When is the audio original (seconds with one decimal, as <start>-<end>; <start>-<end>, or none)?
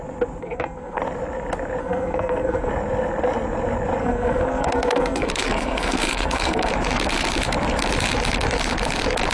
0.0-0.4; 1.0-1.8; 2.7-4.0; 6.7-9.3